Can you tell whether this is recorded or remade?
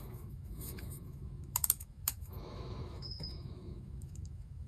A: remade